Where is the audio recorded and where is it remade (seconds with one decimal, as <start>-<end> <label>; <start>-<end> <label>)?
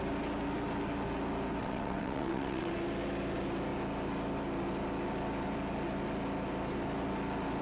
0.0-1.6 recorded; 1.6-2.7 remade; 2.7-7.6 recorded